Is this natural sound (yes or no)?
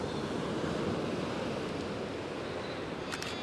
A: yes